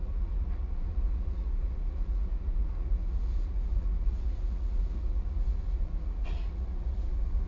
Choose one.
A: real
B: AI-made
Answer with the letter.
B